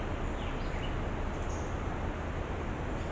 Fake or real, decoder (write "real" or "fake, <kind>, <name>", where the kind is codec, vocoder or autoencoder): real